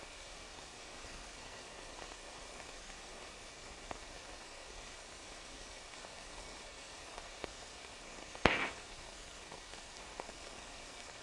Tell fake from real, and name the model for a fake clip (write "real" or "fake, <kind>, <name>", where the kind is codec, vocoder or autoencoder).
fake, codec, SNAC